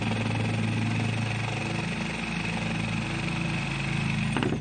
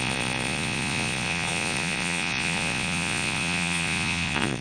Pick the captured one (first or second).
first